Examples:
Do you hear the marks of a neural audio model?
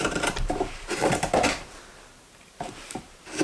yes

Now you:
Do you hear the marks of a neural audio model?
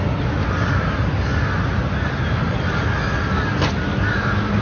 no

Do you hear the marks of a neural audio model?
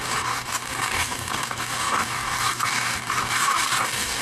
yes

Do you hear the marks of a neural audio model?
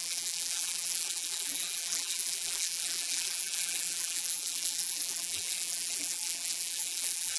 yes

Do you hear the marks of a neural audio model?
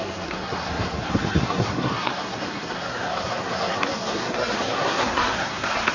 yes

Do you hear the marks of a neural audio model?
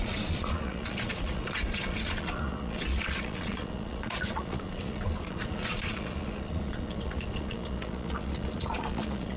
yes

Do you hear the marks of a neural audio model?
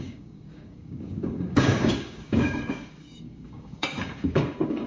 yes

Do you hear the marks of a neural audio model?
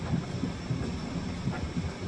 no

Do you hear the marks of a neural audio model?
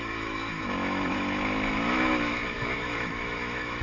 yes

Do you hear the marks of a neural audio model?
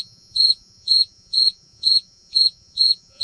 yes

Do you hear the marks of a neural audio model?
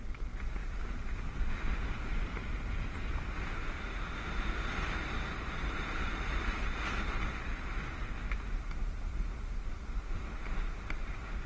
no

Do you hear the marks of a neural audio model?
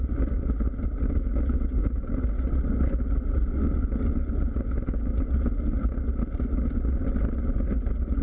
no